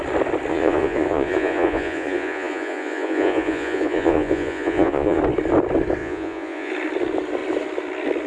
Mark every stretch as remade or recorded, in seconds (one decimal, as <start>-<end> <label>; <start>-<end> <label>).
0.0-0.5 recorded; 0.5-5.2 remade; 5.2-6.0 recorded; 6.0-6.7 remade; 6.7-8.3 recorded